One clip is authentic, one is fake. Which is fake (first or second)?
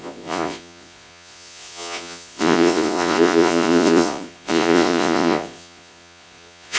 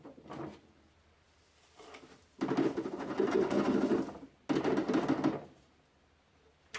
first